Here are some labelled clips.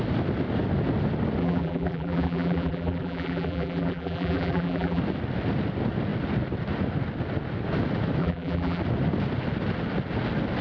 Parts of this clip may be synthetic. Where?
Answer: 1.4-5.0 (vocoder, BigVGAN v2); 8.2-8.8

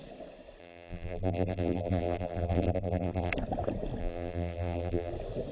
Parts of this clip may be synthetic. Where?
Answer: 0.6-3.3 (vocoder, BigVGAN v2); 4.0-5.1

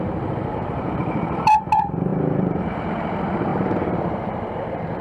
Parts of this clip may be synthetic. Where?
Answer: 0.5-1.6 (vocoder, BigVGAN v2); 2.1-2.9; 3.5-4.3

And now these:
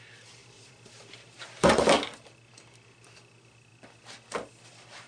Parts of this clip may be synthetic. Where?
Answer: 0.4-1.8 (vocoder, BigVGAN v2)

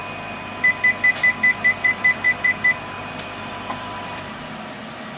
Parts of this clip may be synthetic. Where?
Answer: 1.5-4.6 (vocoder, BigVGAN v2)

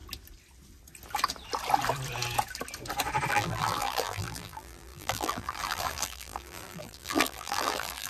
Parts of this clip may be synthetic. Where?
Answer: 3.3-8.1 (vocoder, BigVGAN v2)